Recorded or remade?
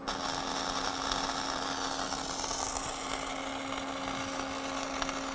recorded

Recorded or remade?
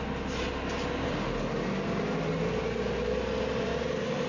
recorded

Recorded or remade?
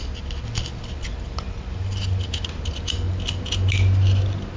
recorded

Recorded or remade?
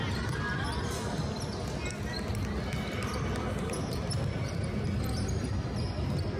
recorded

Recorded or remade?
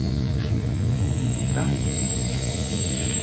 remade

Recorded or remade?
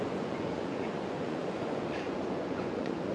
remade